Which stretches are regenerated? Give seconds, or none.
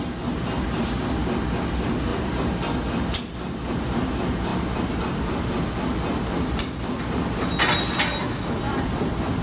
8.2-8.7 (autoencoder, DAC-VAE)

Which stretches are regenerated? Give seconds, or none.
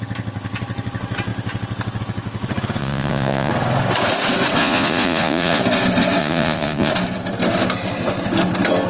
2.8-3.5 (vocoder, Vocos); 4.6-5.6; 6.2-6.9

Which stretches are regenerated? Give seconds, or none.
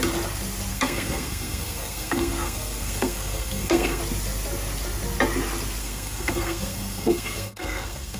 0.7-4.0 (codec, SNAC); 5.8-8.2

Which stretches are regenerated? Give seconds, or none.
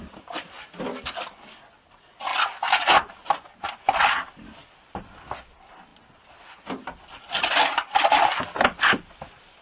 0.0-2.3 (vocoder, BigVGAN v2); 3.8-5.9; 7.0-9.6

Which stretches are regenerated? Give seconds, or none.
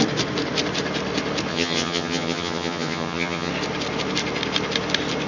1.5-3.5 (vocoder, HiFi-GAN)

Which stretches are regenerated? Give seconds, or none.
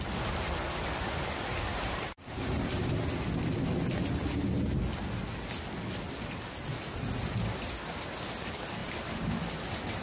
1.7-2.9 (vocoder, BigVGAN v2); 8.8-9.4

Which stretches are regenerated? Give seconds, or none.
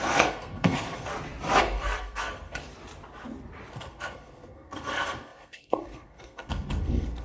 0.0-1.1 (codec, SNAC); 1.6-2.7; 3.7-7.2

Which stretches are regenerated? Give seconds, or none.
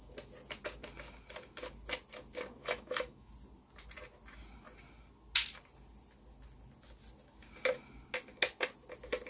2.6-3.3 (autoencoder, DAC-VAE)